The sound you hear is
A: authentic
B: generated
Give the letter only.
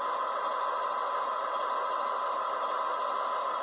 A